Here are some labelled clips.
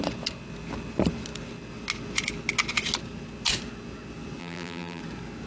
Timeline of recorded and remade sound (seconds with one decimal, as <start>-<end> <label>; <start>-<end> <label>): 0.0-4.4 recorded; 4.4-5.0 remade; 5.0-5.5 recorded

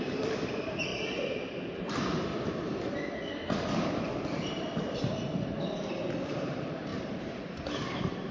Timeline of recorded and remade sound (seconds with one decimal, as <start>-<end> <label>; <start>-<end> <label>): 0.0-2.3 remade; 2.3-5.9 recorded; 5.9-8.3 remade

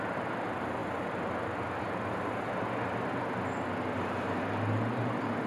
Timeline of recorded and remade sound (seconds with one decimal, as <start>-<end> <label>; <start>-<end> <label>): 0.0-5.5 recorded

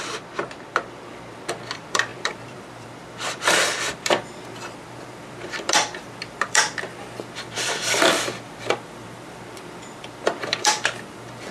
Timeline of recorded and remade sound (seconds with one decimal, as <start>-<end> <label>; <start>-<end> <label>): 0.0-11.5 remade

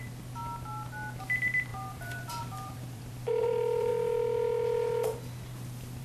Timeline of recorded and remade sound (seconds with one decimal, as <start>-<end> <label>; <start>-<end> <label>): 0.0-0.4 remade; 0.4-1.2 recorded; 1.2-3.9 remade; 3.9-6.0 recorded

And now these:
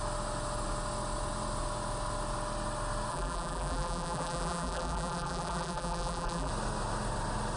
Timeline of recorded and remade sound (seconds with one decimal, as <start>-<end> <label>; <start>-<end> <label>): 0.0-3.1 recorded; 3.1-6.5 remade; 6.5-7.6 recorded

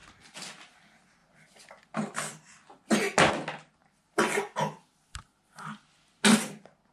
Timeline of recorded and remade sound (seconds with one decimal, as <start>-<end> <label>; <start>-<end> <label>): 0.0-6.9 recorded